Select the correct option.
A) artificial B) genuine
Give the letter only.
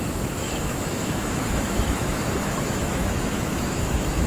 A